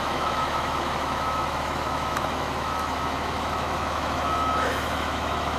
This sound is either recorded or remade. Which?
remade